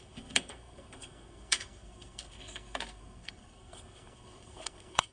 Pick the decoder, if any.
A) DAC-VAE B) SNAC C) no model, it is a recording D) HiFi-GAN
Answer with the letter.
B